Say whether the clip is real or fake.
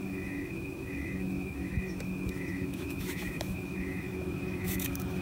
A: fake